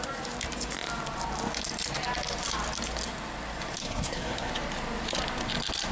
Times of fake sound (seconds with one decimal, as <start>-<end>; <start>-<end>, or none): 3.8-4.5